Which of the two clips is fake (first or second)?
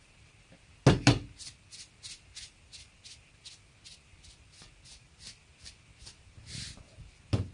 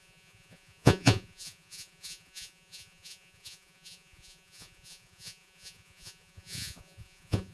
second